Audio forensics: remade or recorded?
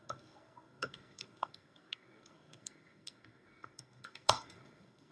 remade